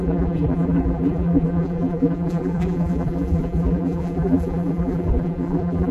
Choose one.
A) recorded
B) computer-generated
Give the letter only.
B